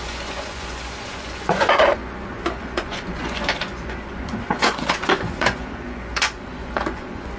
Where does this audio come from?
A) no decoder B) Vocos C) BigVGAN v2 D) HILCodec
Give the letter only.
B